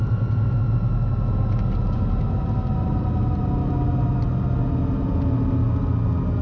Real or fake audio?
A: real